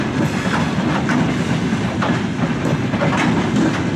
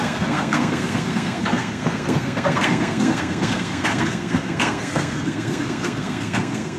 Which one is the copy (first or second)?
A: second